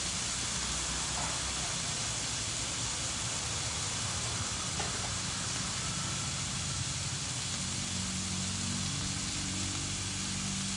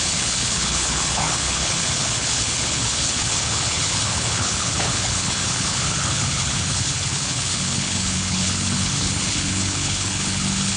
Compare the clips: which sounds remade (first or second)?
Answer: second